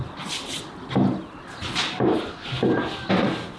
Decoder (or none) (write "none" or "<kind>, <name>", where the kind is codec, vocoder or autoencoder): none